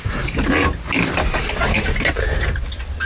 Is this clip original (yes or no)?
yes